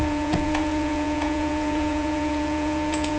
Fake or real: fake